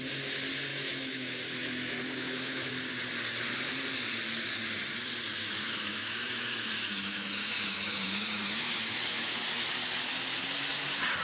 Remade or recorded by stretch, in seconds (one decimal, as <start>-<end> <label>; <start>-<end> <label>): 0.0-0.7 recorded; 0.7-2.7 remade; 2.7-5.4 recorded; 5.4-9.7 remade; 9.7-11.2 recorded

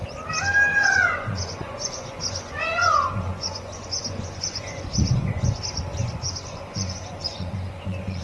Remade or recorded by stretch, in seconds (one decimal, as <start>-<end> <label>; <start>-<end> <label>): 0.0-0.7 recorded; 0.7-5.6 remade; 5.6-6.0 recorded; 6.0-8.2 remade